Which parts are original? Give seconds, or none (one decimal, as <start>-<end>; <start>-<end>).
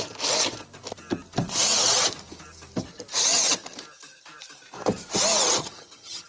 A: 0.0-5.6